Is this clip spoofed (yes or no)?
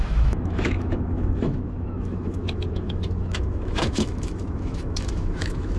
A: yes